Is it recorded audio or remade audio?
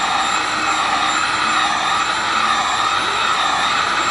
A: recorded